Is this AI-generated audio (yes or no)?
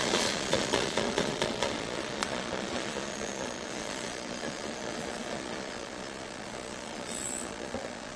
yes